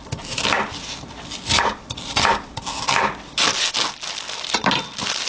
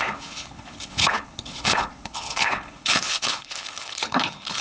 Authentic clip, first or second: first